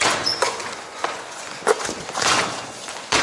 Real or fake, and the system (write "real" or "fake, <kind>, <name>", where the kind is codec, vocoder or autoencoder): fake, vocoder, Vocos